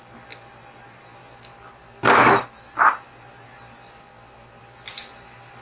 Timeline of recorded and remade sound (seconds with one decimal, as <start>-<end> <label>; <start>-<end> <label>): 0.0-5.6 recorded